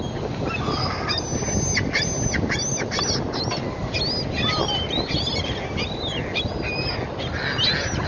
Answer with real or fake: real